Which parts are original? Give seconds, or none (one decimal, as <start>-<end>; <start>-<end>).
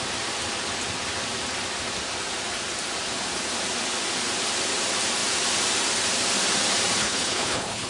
0.0-7.0